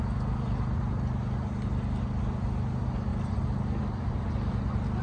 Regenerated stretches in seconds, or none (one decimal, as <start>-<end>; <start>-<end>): none